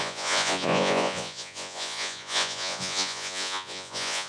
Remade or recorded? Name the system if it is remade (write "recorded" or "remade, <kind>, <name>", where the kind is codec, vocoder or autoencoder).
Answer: remade, vocoder, Vocos